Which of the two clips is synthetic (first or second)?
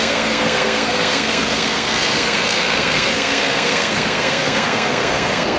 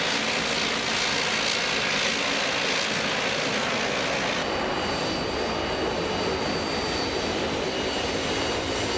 first